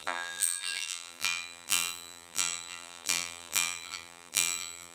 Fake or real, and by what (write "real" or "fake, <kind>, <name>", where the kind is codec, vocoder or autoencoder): fake, vocoder, BigVGAN v2